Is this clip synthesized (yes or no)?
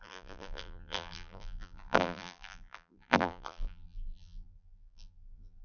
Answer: yes